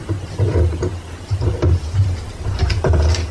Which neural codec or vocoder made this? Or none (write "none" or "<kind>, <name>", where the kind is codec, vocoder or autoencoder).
none